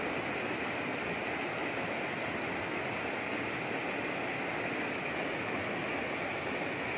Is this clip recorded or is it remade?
recorded